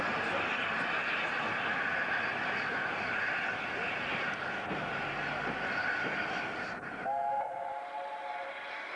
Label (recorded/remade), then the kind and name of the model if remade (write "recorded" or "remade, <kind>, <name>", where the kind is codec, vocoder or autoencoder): recorded